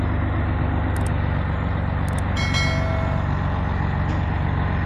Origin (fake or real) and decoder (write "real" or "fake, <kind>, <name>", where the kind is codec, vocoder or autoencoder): real